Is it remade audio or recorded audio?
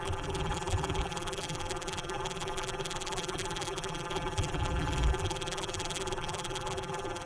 remade